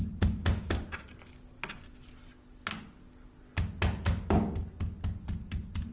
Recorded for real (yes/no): yes